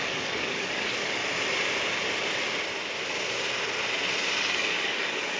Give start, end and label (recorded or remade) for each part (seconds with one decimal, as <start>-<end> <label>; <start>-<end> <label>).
0.0-1.2 remade; 1.2-4.4 recorded; 4.4-5.4 remade